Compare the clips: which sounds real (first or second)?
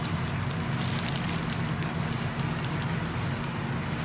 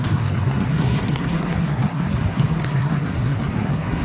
first